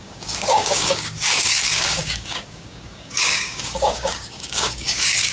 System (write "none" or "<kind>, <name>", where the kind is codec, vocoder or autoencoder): codec, DAC